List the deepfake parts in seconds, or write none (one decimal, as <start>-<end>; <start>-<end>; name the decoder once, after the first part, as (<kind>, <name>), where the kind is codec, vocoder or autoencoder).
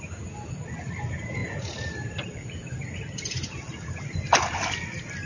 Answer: none